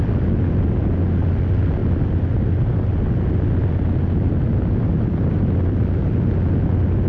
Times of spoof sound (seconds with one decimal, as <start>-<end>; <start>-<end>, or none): none